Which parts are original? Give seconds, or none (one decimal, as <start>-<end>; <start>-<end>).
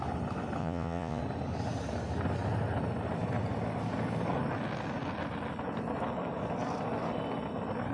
0.0-0.6; 1.2-7.9